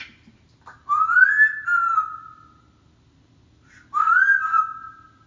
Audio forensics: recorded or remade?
recorded